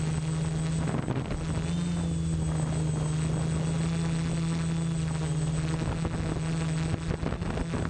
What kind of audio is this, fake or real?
real